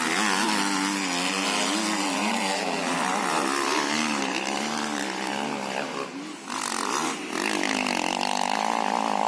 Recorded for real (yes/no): yes